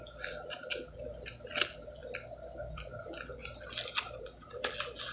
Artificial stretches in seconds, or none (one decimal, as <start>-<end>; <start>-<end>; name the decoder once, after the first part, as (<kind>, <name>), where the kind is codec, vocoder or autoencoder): 0.0-1.1 (vocoder, BigVGAN v2); 1.6-2.0; 2.7-3.4; 4.2-5.1